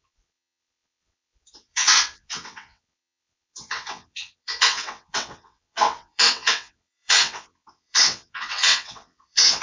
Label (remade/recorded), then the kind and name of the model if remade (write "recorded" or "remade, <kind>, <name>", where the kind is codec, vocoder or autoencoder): remade, vocoder, WaveNeXt